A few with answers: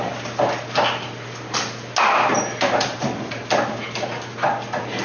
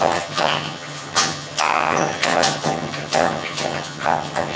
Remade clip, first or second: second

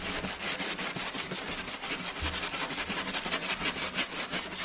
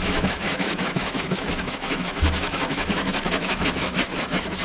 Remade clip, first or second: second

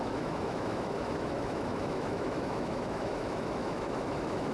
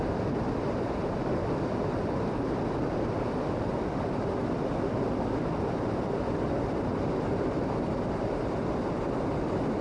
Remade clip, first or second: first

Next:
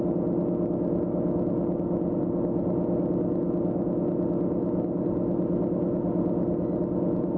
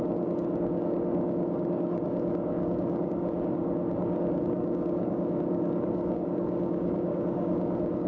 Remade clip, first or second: second